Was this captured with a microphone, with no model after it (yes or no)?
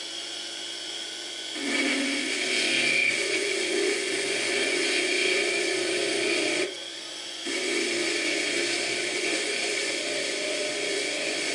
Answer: no